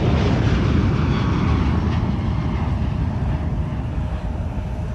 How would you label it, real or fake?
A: real